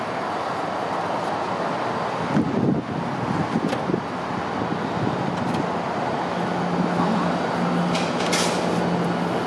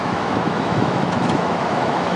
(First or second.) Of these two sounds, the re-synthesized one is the second